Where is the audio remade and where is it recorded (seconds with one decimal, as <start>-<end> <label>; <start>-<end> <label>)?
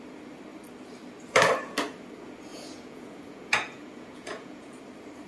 0.0-2.5 recorded; 2.5-4.8 remade; 4.8-5.3 recorded